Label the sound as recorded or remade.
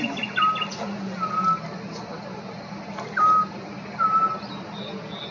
recorded